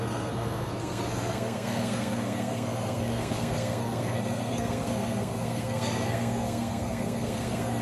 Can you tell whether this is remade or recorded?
remade